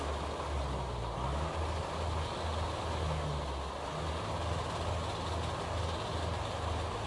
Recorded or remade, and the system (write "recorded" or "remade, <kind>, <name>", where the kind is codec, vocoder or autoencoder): recorded